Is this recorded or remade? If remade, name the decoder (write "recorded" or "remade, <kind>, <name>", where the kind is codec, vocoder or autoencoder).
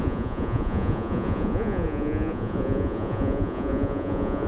remade, vocoder, Vocos